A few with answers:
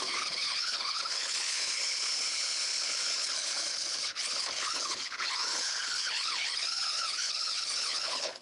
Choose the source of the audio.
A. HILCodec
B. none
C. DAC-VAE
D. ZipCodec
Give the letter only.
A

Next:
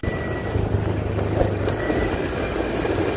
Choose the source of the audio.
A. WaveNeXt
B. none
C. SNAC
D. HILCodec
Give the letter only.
B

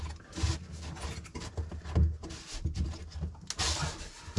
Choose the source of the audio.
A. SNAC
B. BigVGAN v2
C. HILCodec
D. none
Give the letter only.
D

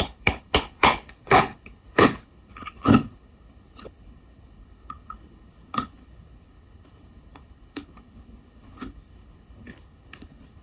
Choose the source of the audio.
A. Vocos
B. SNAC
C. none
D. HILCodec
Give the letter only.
D